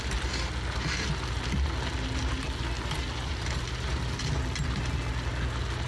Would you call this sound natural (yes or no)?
yes